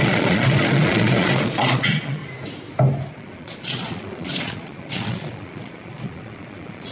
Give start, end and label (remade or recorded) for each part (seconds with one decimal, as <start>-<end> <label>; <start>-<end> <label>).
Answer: 0.0-2.2 remade; 2.2-3.1 recorded; 3.1-6.9 remade